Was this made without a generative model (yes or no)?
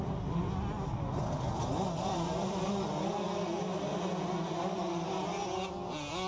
yes